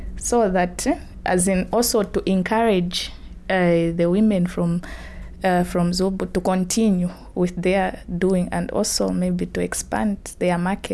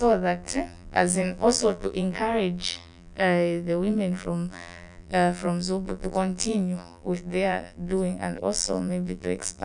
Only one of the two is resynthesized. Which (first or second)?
second